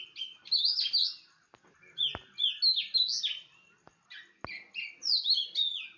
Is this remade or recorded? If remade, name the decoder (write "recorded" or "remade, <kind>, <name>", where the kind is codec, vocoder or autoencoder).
recorded